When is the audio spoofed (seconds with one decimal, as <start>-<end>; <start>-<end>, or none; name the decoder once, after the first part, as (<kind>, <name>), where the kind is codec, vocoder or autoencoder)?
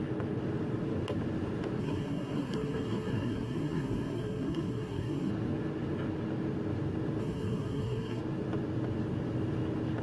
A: 1.8-5.3 (codec, SNAC); 7.2-8.2